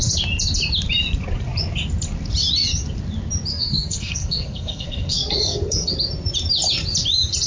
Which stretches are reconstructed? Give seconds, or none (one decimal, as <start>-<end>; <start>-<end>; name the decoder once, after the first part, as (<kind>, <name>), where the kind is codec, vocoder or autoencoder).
3.5-5.9 (codec, SNAC)